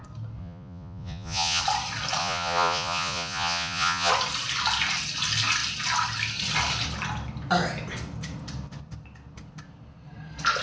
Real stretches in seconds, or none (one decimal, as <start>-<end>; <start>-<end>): 0.0-0.4; 1.6-2.2; 4.1-10.6